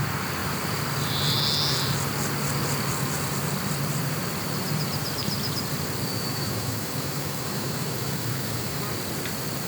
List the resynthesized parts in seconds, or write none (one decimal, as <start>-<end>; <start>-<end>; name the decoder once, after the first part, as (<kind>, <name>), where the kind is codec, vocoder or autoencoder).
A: 6.3-8.8 (autoencoder, DAC-VAE)